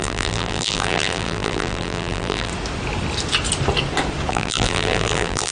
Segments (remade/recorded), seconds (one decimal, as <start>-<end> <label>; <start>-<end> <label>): 0.0-2.5 remade; 2.5-4.3 recorded; 4.3-5.5 remade